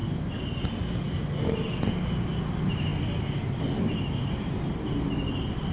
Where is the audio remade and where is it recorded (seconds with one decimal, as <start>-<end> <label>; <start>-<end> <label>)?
0.0-5.7 recorded